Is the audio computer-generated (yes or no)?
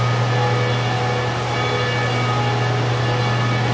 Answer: no